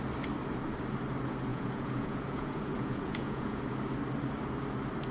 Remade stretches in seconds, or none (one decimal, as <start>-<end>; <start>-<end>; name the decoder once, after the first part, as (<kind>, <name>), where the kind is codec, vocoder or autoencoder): 1.5-3.6 (vocoder, Vocos)